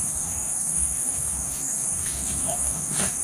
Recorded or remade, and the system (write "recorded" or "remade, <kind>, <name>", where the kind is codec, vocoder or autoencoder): remade, codec, DAC